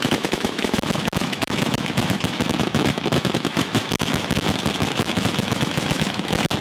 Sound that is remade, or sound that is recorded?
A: remade